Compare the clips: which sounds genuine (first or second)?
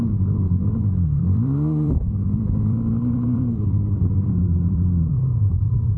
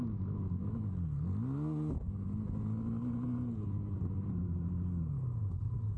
second